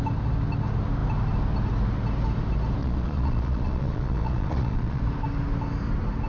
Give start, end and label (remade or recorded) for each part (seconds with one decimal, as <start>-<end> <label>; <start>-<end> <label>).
0.0-2.8 recorded; 2.8-5.0 remade; 5.0-6.3 recorded